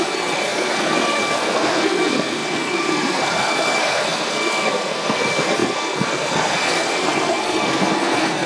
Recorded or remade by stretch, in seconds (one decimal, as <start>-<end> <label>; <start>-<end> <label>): 0.0-8.5 remade